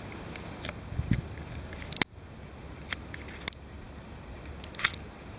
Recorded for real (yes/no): yes